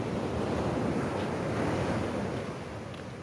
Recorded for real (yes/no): yes